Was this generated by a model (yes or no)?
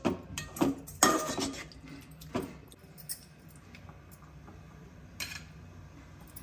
no